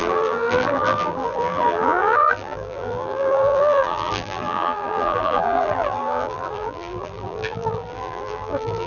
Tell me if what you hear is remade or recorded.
remade